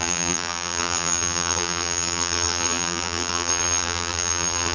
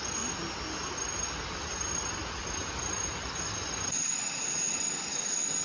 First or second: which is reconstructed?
first